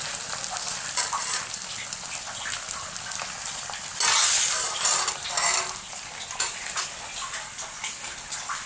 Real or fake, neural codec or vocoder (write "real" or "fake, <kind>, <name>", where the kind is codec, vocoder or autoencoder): real